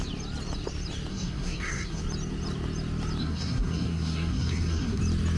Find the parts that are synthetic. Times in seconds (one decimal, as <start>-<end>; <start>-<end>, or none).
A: 1.1-2.0; 3.2-5.0